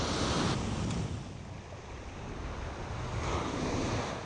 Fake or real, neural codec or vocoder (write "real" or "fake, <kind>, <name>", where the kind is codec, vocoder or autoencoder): real